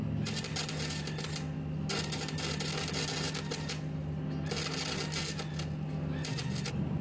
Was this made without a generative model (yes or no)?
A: yes